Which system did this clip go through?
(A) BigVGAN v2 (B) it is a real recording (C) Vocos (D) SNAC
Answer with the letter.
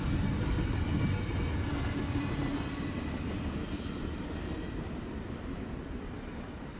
B